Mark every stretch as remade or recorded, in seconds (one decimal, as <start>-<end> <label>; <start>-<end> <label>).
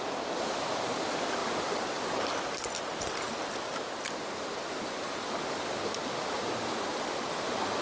0.0-7.8 recorded